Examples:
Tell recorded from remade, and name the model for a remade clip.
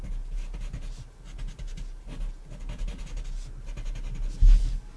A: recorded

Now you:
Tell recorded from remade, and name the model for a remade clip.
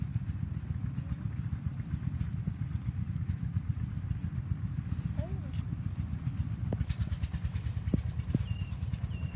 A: recorded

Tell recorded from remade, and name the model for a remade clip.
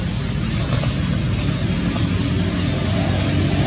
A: recorded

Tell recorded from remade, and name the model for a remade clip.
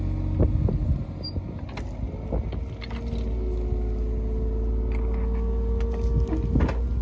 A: recorded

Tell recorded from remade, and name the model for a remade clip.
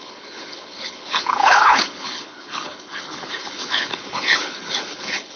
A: remade, codec, HILCodec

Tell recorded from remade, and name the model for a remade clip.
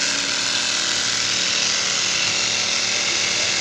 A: recorded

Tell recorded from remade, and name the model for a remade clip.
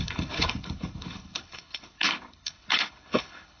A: remade, codec, HILCodec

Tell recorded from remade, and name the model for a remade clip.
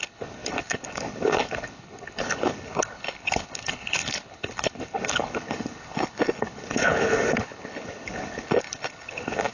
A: remade, codec, HILCodec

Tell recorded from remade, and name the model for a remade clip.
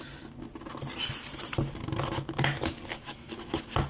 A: recorded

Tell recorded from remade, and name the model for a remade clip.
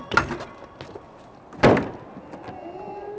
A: recorded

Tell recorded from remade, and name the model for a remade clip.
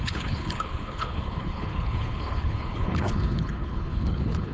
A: remade, codec, HILCodec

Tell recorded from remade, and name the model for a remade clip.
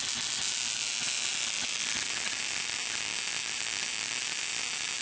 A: recorded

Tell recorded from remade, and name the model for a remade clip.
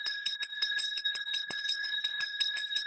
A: remade, codec, HILCodec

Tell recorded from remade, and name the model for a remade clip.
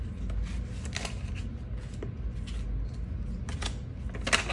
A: recorded